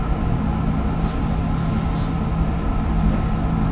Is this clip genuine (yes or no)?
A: yes